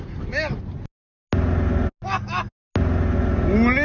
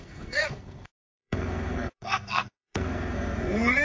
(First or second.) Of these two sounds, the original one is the first